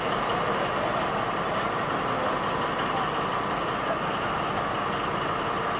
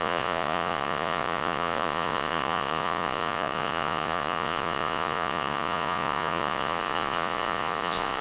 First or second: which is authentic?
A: first